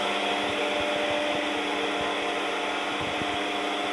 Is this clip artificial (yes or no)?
no